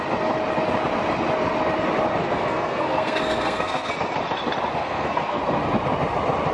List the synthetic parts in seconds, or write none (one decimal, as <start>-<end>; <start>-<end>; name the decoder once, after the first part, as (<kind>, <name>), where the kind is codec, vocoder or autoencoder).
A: 2.2-3.9 (codec, SNAC); 4.8-5.4